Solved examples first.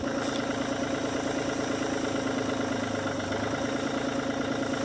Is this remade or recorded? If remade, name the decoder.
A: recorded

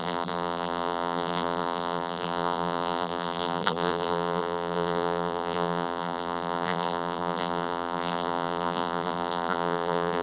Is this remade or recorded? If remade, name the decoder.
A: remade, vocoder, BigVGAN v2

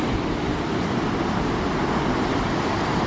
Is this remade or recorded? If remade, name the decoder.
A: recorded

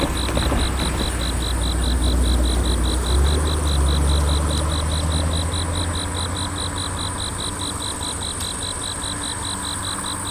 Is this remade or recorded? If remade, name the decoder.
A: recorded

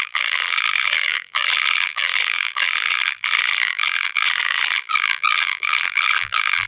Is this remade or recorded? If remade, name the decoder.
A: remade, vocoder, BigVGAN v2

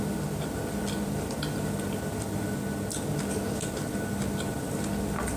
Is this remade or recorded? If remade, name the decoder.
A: recorded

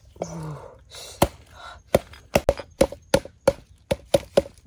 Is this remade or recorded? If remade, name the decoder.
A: recorded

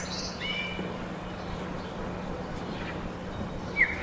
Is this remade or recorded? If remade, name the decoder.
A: recorded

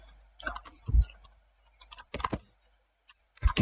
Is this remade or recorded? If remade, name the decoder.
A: recorded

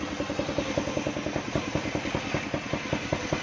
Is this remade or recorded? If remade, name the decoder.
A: recorded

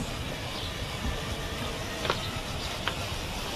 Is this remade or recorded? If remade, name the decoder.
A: recorded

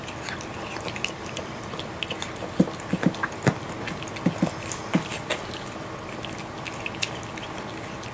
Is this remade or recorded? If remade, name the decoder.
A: recorded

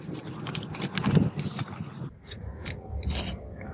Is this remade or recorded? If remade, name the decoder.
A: recorded